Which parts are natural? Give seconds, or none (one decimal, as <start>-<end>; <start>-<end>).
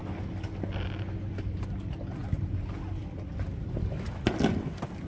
0.0-5.1